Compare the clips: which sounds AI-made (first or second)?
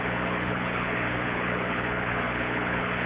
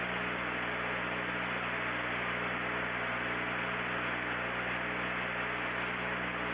first